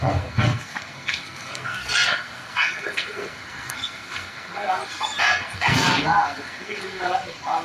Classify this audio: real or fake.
fake